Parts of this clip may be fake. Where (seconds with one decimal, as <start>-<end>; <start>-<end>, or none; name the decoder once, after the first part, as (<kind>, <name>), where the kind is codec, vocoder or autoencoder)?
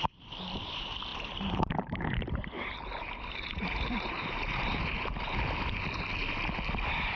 1.1-5.3 (vocoder, BigVGAN v2)